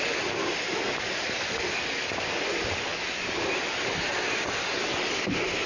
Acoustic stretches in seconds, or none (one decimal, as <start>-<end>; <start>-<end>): 0.0-5.7